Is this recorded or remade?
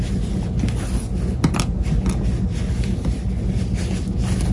recorded